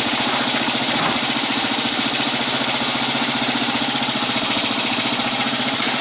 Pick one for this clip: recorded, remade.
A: remade